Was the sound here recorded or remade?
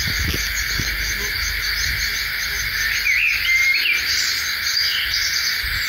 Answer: recorded